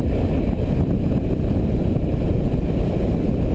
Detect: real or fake real